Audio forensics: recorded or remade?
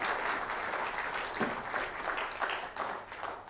recorded